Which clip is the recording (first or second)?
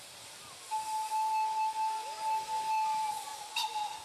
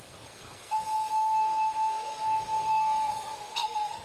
first